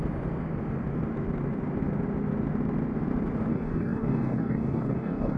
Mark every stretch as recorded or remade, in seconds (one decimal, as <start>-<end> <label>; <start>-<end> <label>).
0.0-3.5 recorded; 3.5-5.4 remade